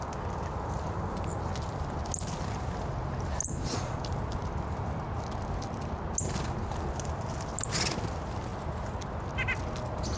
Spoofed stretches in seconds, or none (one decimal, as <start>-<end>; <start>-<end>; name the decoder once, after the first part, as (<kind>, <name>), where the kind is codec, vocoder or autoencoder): 3.4-4.0 (vocoder, Vocos)